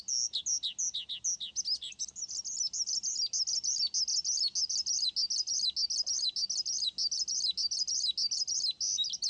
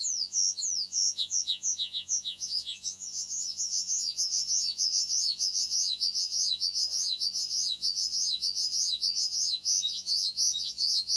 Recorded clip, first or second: first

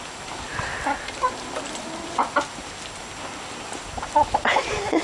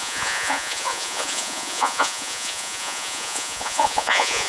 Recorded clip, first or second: first